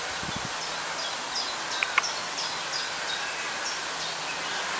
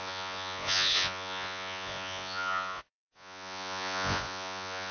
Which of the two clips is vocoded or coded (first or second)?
second